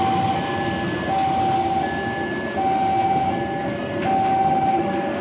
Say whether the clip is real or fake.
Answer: real